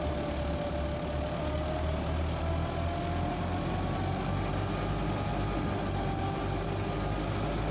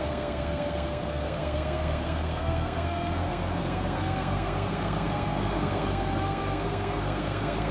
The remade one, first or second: second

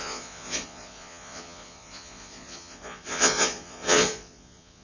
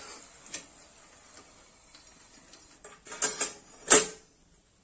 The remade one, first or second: first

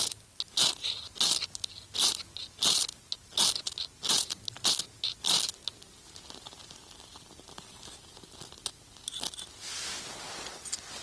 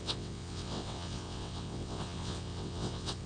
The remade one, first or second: second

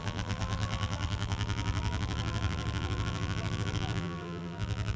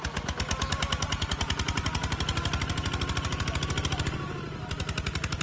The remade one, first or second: first